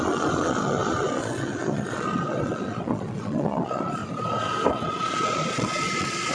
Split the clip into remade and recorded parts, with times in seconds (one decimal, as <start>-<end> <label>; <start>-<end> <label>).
0.0-4.0 remade; 4.0-4.7 recorded; 4.7-6.3 remade